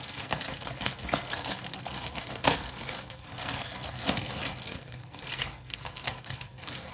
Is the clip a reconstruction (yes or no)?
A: yes